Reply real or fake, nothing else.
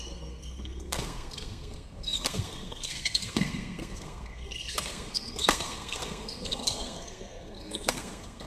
fake